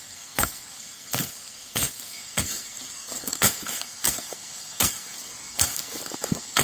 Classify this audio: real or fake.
fake